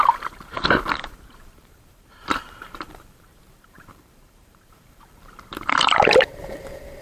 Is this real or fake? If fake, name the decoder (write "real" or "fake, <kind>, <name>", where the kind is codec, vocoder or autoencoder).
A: fake, vocoder, BigVGAN v2